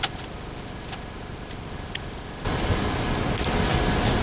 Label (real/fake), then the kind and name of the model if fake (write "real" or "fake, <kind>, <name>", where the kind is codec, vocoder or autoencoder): real